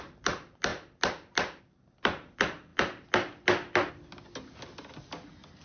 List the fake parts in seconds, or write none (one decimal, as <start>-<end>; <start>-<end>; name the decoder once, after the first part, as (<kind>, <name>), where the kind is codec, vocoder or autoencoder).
none